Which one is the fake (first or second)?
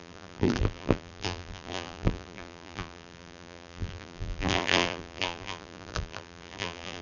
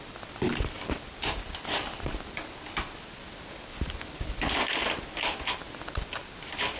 first